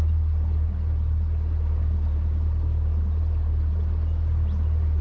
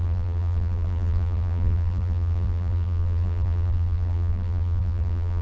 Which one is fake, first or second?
second